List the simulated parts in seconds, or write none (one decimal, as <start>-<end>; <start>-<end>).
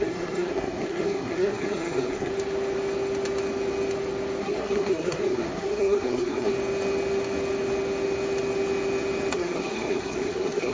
0.0-2.3; 4.4-6.5; 9.3-10.7